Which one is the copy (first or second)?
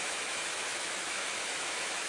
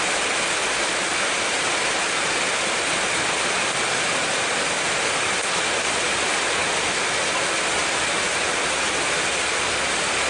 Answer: first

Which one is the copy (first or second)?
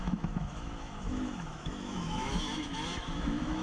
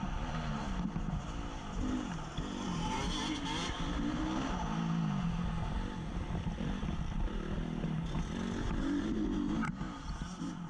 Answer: first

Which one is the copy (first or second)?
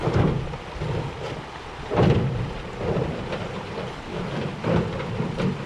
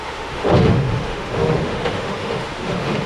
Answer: second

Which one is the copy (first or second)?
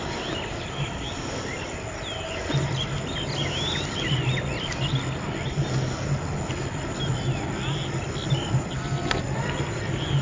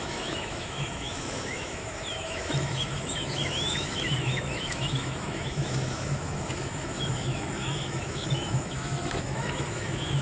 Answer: second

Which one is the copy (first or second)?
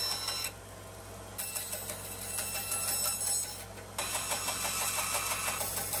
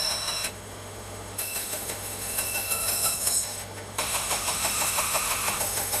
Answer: second